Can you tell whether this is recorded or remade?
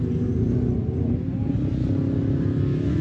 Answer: recorded